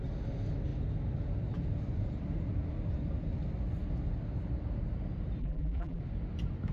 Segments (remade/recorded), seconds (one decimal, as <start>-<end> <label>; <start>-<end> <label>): 0.0-5.4 recorded; 5.4-6.0 remade; 6.0-6.7 recorded